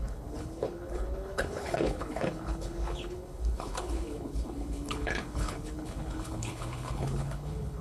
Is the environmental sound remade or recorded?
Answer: remade